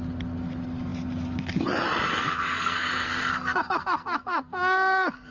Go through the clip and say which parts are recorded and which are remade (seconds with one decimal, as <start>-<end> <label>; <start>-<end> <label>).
0.0-2.1 recorded; 2.1-5.3 remade